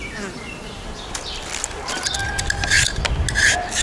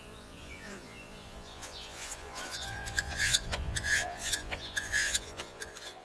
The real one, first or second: first